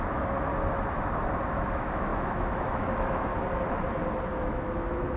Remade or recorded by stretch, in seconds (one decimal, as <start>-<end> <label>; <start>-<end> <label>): 0.0-0.5 remade; 0.5-1.5 recorded; 1.5-3.3 remade; 3.3-4.3 recorded; 4.3-5.2 remade